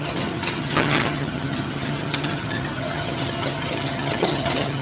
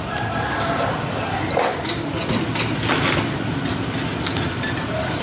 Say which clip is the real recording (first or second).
second